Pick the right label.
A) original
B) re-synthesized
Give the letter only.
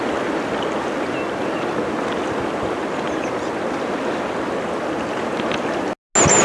A